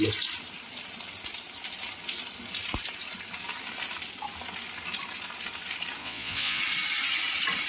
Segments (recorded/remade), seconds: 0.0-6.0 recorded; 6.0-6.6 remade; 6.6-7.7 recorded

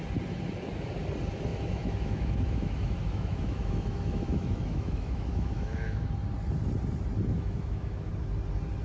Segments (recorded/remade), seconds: 0.0-1.5 recorded; 1.5-6.1 remade; 6.1-7.3 recorded; 7.3-8.1 remade; 8.1-8.8 recorded

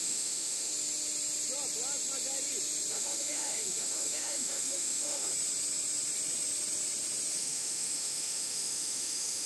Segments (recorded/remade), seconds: 0.0-0.7 remade; 0.7-2.9 recorded; 2.9-5.3 remade; 5.3-7.4 recorded; 7.4-9.5 remade